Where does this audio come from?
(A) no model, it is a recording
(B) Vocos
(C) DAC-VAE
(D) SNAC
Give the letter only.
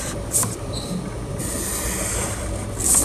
A